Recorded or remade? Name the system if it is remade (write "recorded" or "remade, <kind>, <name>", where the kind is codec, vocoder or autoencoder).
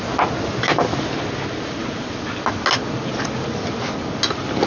recorded